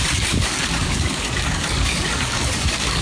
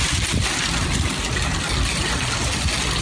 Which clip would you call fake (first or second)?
first